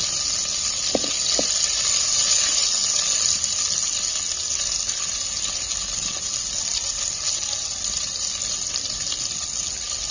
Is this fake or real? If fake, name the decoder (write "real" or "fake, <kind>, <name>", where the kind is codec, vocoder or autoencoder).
real